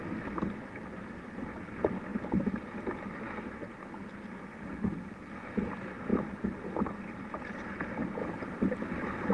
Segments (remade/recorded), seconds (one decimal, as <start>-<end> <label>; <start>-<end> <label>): 0.0-6.1 recorded; 6.1-6.9 remade; 6.9-8.2 recorded; 8.2-9.3 remade